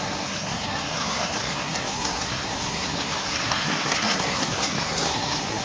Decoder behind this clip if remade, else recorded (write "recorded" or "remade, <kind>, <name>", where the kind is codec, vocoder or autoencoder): remade, codec, SNAC